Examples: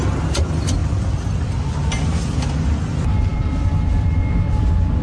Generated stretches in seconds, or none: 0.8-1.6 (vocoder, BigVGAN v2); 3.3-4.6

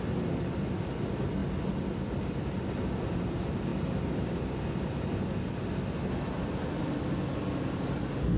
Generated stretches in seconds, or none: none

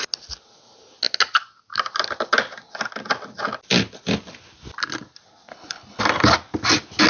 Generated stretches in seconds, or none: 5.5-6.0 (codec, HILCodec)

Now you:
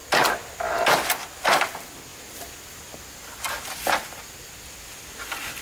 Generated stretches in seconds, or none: none

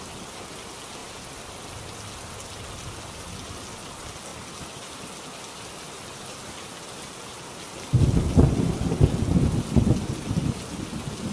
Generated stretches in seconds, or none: none

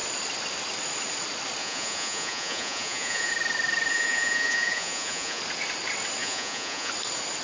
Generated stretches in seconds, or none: 1.6-3.3 (vocoder, Vocos); 3.9-5.4; 6.2-6.9